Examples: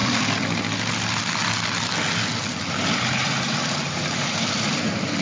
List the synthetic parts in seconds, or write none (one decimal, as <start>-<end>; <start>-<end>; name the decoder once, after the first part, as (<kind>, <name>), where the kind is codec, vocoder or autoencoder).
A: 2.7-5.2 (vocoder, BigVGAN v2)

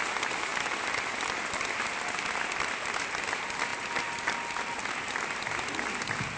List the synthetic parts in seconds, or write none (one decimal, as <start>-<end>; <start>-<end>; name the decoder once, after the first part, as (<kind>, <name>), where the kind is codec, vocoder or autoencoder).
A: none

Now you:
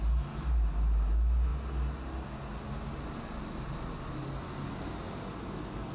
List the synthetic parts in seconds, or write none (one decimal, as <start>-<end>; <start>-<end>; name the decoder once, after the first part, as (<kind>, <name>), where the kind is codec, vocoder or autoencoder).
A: none

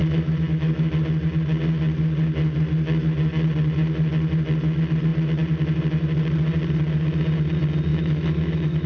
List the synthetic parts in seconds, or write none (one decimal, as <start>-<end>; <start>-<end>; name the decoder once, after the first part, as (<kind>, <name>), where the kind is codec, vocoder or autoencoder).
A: 0.0-0.9 (autoencoder, DAC-VAE); 7.9-8.9

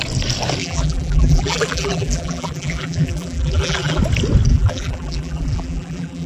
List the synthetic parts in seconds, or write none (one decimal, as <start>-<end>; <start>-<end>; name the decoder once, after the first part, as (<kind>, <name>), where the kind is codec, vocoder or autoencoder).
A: 0.6-4.0 (vocoder, BigVGAN v2); 4.5-6.3

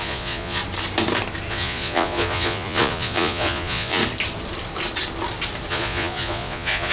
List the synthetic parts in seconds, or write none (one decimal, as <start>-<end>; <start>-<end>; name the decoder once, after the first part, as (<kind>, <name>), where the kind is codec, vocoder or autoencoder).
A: 0.0-0.6 (vocoder, Vocos); 1.5-4.0; 5.7-6.9

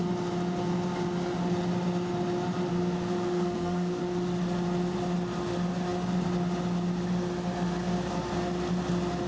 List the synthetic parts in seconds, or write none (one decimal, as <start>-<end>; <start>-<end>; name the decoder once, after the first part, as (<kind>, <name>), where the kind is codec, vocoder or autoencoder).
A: 2.7-4.0 (codec, SNAC)

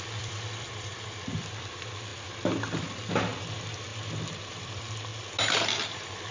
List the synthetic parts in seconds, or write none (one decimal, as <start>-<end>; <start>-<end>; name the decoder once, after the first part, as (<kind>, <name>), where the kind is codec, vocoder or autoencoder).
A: 0.0-2.1 (vocoder, BigVGAN v2); 3.1-3.9; 4.5-5.1